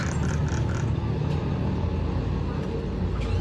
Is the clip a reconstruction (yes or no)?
no